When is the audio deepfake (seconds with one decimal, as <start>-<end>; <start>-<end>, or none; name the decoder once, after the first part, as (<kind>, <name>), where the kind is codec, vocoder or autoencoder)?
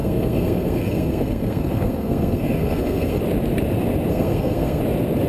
0.0-3.2 (codec, SNAC); 4.1-4.8